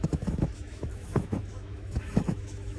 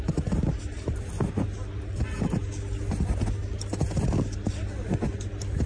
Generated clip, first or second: first